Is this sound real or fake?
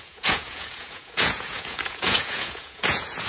fake